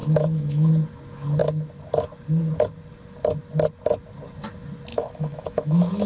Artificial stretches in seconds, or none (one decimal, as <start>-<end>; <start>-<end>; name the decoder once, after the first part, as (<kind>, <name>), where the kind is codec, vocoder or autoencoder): 0.0-0.7 (autoencoder, DAC-VAE); 4.9-6.1